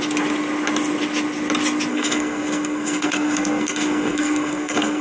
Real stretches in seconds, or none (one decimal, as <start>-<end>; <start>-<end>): 0.0-1.9